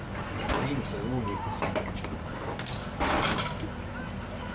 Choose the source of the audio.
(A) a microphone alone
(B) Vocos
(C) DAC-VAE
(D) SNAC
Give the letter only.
A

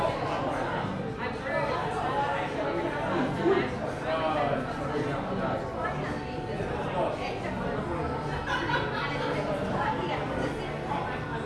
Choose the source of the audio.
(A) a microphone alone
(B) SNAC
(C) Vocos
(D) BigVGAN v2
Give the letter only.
A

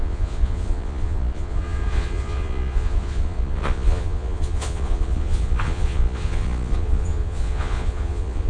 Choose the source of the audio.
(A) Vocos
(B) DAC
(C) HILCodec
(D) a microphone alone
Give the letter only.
A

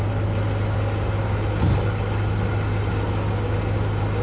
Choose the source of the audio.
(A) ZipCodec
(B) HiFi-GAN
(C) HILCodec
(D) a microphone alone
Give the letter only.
D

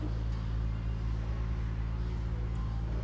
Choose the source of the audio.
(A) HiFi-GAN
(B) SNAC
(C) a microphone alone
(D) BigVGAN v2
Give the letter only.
C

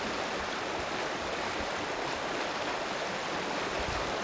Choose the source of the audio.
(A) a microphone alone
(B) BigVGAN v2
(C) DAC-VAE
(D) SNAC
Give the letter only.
A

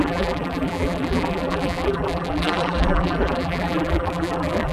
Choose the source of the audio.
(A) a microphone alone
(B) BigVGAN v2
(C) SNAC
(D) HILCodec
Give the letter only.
B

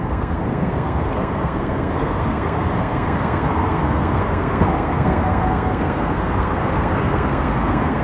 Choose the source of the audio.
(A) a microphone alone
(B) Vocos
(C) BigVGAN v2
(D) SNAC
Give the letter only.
D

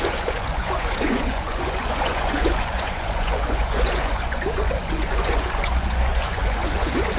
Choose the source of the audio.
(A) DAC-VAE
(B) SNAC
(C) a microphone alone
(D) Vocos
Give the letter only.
D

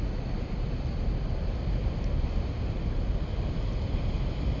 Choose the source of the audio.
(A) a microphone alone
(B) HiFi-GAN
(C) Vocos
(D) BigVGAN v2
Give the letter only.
A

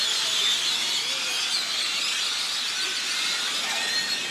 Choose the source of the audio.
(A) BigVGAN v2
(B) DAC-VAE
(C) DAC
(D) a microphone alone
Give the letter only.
D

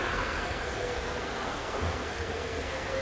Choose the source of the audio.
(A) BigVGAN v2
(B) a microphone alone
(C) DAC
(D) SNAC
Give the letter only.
D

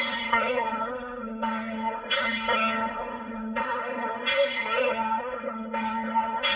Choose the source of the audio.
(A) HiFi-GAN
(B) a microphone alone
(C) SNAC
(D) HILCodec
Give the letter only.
C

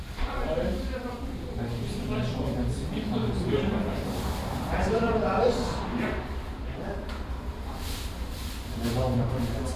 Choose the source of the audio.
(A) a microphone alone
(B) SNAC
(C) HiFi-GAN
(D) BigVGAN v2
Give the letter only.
D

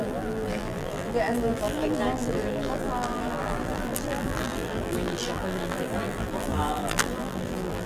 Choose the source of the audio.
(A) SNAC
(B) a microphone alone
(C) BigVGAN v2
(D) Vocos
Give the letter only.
C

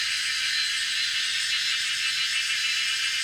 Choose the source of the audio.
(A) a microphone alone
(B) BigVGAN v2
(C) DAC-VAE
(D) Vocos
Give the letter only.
A